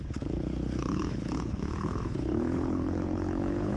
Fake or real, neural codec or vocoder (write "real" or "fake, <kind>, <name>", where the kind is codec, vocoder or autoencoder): fake, codec, HILCodec